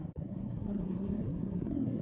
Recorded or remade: remade